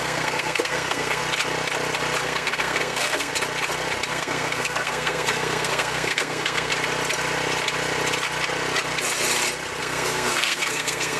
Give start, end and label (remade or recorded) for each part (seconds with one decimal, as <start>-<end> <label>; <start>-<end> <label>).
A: 0.0-1.2 remade; 1.2-2.2 recorded; 2.2-3.3 remade; 3.3-4.1 recorded; 4.1-6.7 remade; 6.7-9.8 recorded; 9.8-11.2 remade